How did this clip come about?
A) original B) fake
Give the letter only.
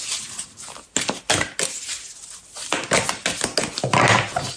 A